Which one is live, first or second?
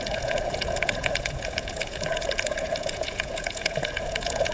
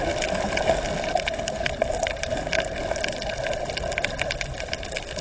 second